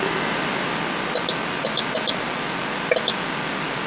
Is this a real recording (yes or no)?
yes